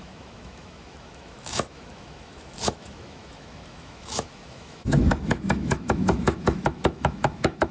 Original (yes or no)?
no